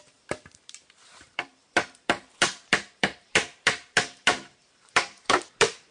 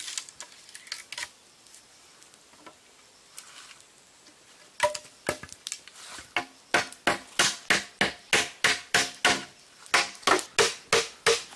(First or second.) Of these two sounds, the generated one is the first